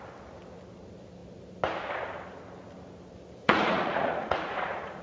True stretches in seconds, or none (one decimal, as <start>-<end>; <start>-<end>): 0.0-3.4